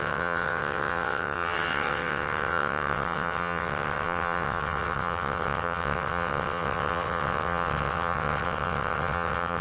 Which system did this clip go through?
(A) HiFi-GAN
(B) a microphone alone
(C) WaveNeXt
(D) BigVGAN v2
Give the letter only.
C